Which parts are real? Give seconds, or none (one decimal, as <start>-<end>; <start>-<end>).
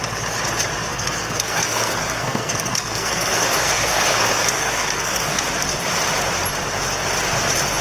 0.0-0.9; 5.4-7.8